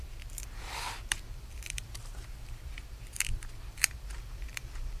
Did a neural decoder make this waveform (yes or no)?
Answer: yes